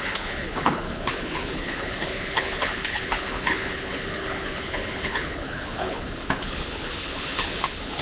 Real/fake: fake